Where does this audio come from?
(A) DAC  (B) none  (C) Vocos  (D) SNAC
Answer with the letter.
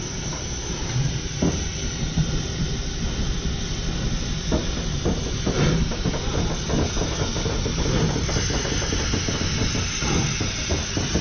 B